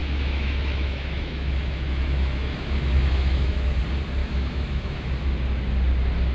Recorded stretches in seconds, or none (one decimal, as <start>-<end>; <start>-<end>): 3.8-4.2; 5.1-6.3